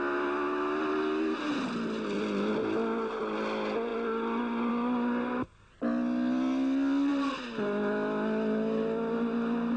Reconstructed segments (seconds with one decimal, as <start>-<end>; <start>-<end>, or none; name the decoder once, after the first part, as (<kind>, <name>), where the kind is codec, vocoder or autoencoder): none